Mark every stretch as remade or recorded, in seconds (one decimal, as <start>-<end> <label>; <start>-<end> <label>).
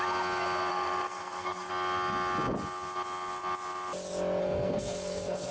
0.0-0.7 recorded; 0.7-1.7 remade; 1.7-4.4 recorded; 4.4-5.5 remade